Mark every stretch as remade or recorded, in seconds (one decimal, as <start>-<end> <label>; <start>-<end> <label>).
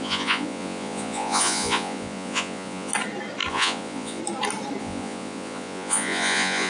0.0-2.9 remade; 2.9-3.5 recorded; 3.5-4.2 remade; 4.2-4.8 recorded; 4.8-6.7 remade